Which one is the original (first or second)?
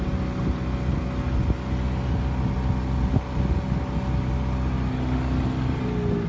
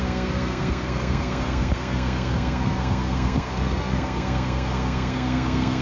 first